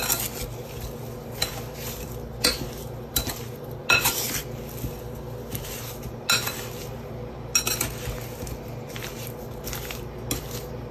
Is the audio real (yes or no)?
yes